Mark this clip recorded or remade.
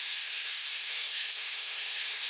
remade